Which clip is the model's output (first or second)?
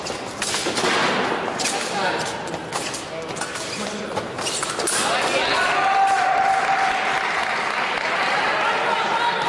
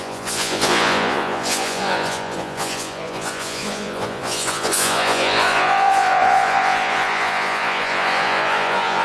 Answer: second